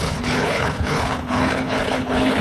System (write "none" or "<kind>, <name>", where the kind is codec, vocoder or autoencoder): codec, HILCodec